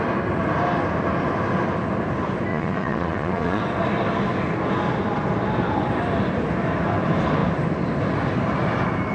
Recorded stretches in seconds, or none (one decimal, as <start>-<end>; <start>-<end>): 0.0-2.5; 3.6-9.1